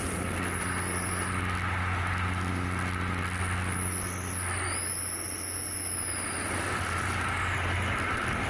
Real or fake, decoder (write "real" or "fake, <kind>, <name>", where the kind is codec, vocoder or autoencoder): real